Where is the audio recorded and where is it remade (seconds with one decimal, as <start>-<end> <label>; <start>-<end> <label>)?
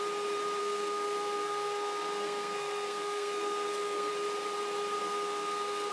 0.0-0.6 recorded; 0.6-4.1 remade; 4.1-5.0 recorded; 5.0-5.9 remade